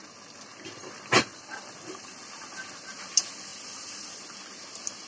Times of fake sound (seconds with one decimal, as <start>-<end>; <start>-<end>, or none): 0.5-1.4; 3.5-4.2